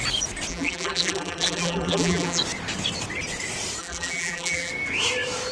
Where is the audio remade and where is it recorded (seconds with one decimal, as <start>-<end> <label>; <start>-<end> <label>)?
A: 0.0-0.5 recorded; 0.5-2.4 remade; 2.4-3.8 recorded; 3.8-4.7 remade; 4.7-5.5 recorded